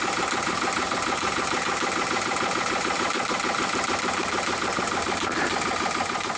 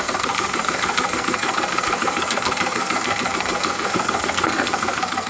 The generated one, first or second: second